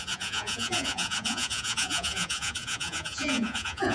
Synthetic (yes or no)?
yes